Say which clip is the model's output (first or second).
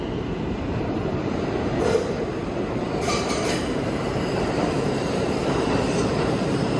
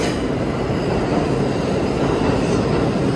first